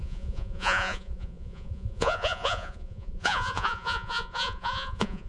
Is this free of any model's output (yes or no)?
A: no